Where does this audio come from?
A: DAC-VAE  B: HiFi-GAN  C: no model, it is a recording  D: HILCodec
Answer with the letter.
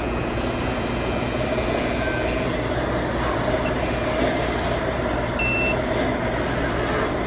C